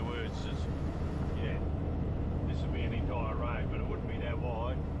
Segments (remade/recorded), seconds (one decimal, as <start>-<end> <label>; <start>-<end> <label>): 0.0-0.4 recorded; 0.4-1.0 remade; 1.0-1.4 recorded; 1.4-4.4 remade; 4.4-5.0 recorded